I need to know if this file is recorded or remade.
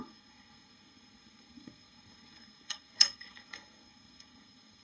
remade